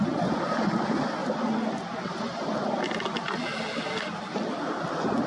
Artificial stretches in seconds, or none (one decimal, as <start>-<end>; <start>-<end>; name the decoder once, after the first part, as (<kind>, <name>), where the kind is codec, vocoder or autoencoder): none